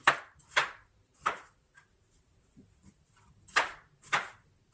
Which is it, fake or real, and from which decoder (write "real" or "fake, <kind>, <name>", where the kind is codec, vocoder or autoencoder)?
real